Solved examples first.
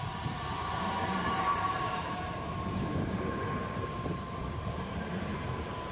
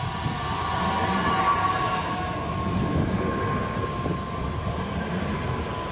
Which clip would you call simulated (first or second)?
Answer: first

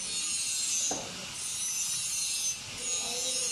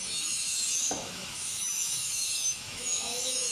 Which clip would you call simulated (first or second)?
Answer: second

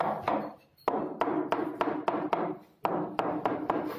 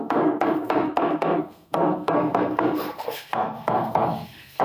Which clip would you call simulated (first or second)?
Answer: second